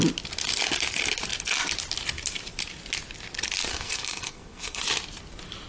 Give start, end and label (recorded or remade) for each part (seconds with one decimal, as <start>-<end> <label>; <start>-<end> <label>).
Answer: 0.0-3.7 recorded; 3.7-4.8 remade; 4.8-5.7 recorded